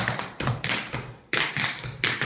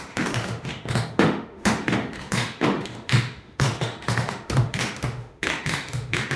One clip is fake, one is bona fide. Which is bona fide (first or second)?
first